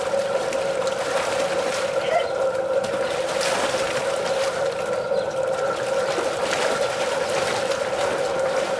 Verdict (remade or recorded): recorded